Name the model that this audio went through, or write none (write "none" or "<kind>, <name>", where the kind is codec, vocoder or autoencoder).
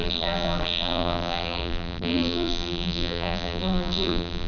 vocoder, BigVGAN v2